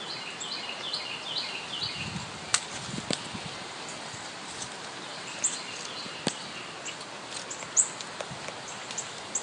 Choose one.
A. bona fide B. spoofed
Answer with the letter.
A